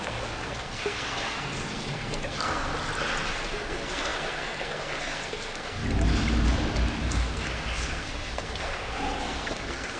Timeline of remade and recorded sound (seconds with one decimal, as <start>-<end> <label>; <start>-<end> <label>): 0.0-2.7 remade; 2.7-3.3 recorded; 3.3-5.8 remade; 5.8-7.0 recorded; 7.0-10.0 remade